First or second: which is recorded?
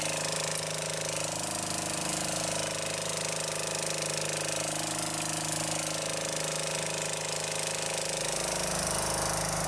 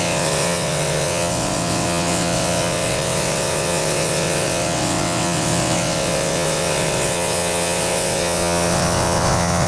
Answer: first